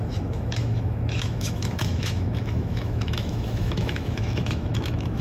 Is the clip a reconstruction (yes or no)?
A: yes